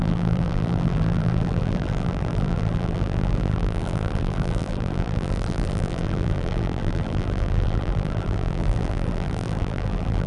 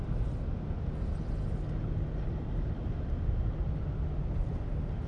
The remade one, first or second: first